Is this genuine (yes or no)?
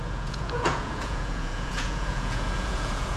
no